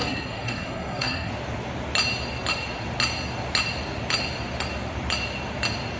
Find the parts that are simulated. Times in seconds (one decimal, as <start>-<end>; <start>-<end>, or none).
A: 0.0-1.3